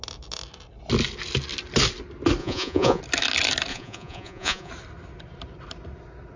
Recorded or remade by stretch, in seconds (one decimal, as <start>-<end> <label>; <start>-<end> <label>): 0.0-2.4 recorded; 2.4-3.0 remade; 3.0-3.7 recorded; 3.7-4.7 remade; 4.7-6.4 recorded